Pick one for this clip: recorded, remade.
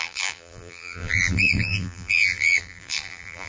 remade